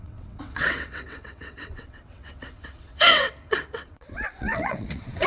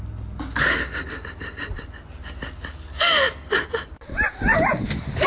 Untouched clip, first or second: second